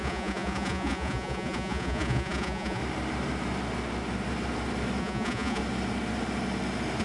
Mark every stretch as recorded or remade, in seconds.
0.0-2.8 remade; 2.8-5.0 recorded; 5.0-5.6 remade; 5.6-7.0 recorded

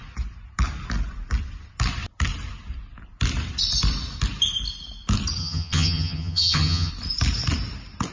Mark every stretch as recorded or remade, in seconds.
0.0-5.4 recorded; 5.4-6.9 remade; 6.9-8.1 recorded

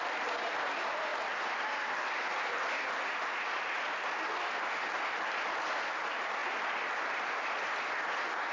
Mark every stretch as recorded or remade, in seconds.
0.0-8.5 recorded

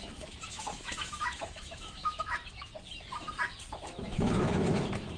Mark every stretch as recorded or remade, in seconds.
0.0-2.7 remade; 2.7-3.7 recorded; 3.7-5.2 remade

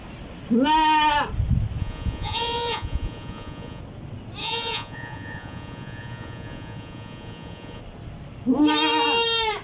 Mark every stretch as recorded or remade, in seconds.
0.0-1.8 recorded; 1.8-3.8 remade; 3.8-4.4 recorded; 4.4-7.8 remade; 7.8-9.6 recorded

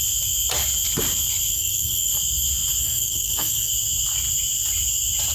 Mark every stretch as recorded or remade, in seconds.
0.0-1.5 recorded; 1.5-2.1 remade; 2.1-2.8 recorded; 2.8-3.7 remade; 3.7-5.3 recorded

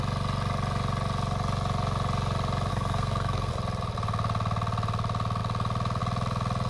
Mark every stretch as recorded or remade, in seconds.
0.0-2.7 recorded; 2.7-3.5 remade; 3.5-6.7 recorded

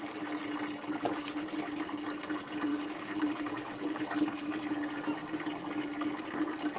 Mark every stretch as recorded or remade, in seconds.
0.0-2.7 recorded; 2.7-4.0 remade; 4.0-6.8 recorded